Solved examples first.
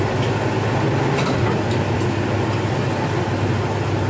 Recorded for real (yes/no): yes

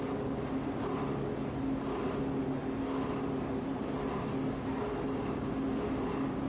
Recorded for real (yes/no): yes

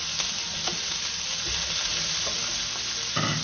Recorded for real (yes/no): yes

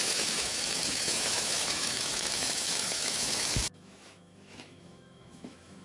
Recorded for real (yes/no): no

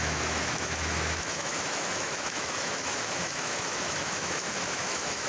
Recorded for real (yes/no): no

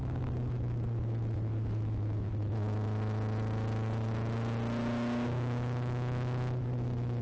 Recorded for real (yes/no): no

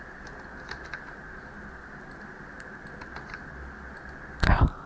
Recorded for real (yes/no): yes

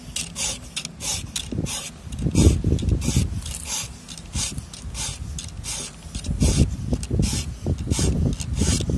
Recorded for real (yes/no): yes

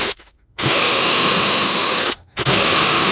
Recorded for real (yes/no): no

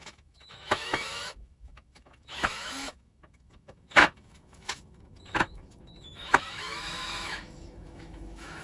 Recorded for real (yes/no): no